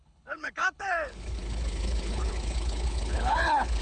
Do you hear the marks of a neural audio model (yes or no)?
yes